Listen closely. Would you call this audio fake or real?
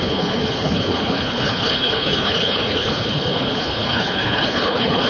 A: fake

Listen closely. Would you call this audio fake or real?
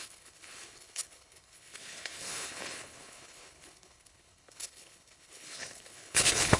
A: fake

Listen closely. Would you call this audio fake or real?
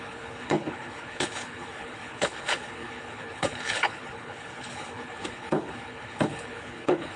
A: fake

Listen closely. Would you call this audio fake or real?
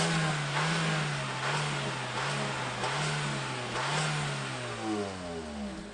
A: real